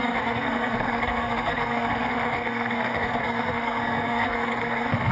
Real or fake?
fake